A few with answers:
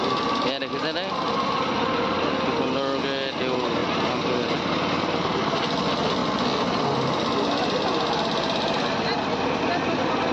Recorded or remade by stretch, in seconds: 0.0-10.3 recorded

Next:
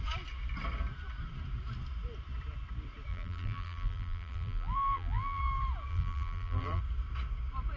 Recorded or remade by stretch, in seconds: 0.0-3.1 recorded; 3.1-5.4 remade; 5.4-5.9 recorded; 5.9-6.8 remade; 6.8-7.8 recorded

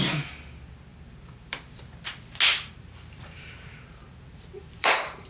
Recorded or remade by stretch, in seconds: 0.0-0.9 recorded; 0.9-1.8 remade; 1.8-2.5 recorded; 2.5-5.3 remade